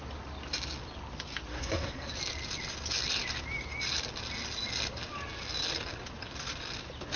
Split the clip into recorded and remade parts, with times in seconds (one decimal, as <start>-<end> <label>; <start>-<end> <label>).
0.0-1.5 recorded; 1.5-2.1 remade; 2.1-7.2 recorded